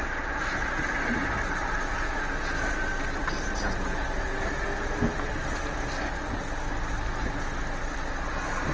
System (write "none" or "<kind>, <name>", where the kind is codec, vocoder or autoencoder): none